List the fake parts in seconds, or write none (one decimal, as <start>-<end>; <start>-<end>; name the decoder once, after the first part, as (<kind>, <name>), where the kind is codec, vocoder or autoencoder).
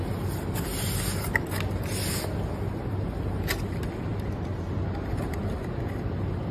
none